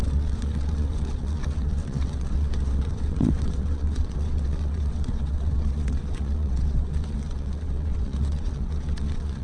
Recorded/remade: remade